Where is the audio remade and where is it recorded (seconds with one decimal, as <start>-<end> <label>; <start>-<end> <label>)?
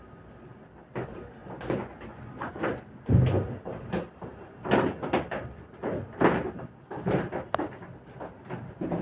0.0-1.4 recorded; 1.4-2.6 remade; 2.6-9.0 recorded